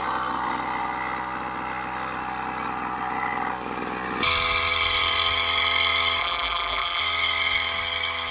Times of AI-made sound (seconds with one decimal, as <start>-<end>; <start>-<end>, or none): 6.2-7.0